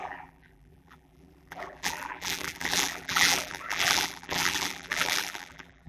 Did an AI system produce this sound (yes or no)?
yes